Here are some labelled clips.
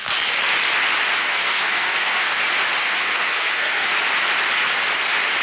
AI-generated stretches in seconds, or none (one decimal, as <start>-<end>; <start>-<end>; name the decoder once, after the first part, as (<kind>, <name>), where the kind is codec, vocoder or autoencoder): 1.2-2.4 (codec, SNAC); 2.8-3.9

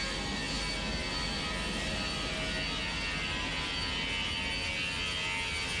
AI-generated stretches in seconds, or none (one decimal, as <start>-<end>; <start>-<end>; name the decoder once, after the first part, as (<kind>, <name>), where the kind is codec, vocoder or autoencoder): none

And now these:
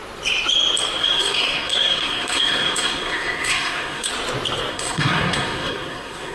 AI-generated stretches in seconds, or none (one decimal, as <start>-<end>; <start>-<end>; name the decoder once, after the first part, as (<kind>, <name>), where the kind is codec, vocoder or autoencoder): 1.0-4.1 (codec, SNAC); 4.7-6.3

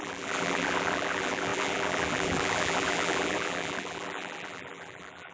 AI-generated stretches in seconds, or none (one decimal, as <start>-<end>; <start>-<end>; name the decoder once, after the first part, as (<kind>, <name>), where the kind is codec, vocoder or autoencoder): 0.0-5.3 (vocoder, BigVGAN v2)

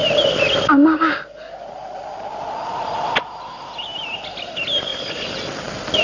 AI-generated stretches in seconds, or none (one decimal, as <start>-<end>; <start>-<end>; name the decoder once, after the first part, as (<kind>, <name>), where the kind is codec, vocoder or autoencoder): none

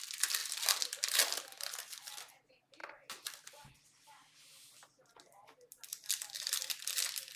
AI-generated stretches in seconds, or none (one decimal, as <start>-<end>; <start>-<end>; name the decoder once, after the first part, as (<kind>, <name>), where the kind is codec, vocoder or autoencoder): none